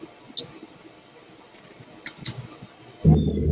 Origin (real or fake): real